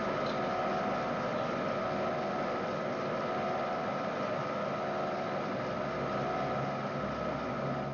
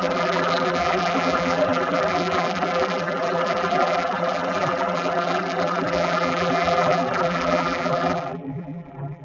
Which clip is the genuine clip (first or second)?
first